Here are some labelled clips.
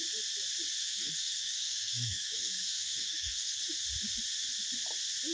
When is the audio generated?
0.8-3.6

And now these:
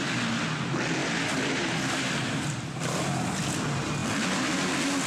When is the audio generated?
none

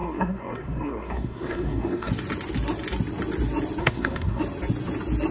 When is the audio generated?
0.0-2.1; 3.8-4.4

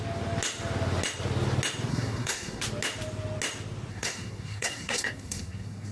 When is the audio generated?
1.9-2.6; 3.9-5.9

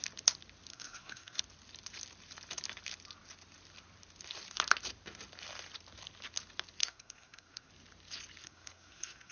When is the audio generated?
0.7-1.4; 6.8-7.7; 8.4-9.3

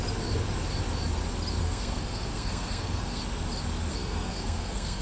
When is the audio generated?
1.6-3.2; 3.9-5.0

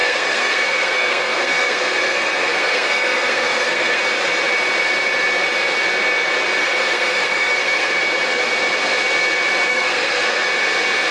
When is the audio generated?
0.0-4.0; 6.6-7.9; 9.7-10.5